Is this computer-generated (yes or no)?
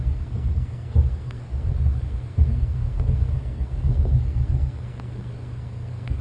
yes